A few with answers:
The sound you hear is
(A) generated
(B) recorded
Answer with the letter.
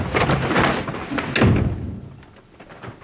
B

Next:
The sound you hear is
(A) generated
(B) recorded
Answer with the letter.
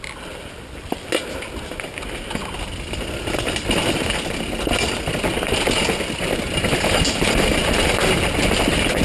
B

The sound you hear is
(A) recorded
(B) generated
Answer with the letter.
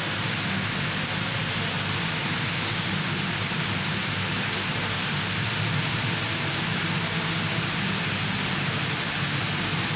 A